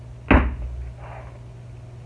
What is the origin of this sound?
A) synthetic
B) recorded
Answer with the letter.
B